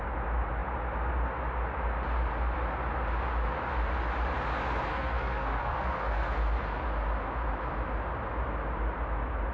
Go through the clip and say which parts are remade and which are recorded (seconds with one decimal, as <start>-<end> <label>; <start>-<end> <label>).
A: 0.0-4.9 recorded; 4.9-6.3 remade; 6.3-9.5 recorded